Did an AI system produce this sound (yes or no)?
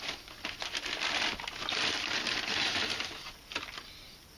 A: no